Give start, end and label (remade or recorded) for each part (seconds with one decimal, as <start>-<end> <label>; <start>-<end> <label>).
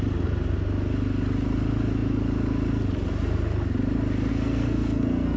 0.0-4.3 recorded; 4.3-5.4 remade